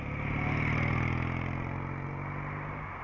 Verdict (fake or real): real